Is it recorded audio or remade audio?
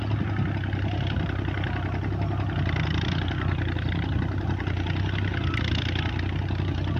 recorded